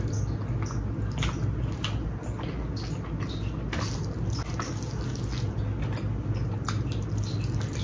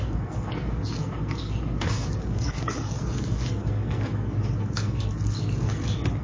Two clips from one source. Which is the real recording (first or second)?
first